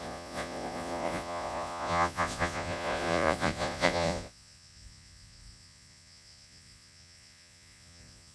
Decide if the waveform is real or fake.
fake